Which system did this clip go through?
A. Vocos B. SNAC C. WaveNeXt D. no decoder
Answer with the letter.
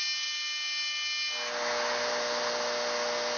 D